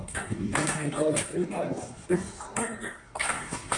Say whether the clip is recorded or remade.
remade